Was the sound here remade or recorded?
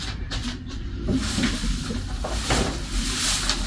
recorded